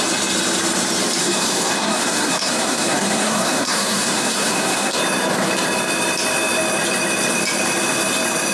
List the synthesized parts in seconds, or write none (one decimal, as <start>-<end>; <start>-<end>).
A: 1.2-5.0